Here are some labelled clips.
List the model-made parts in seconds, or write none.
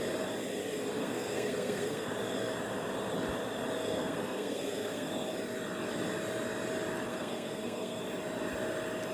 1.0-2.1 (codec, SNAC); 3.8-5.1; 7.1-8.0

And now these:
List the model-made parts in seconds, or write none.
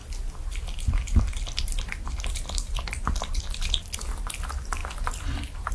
none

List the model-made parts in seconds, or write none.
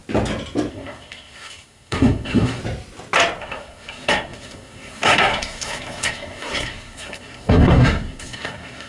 0.7-2.6 (codec, SNAC); 3.4-8.9